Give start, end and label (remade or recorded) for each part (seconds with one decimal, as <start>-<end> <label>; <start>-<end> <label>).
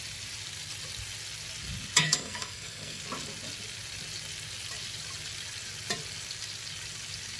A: 0.0-2.0 recorded; 2.0-3.0 remade; 3.0-7.4 recorded